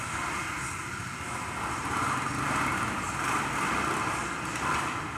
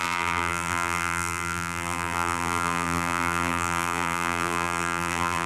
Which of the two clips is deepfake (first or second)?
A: second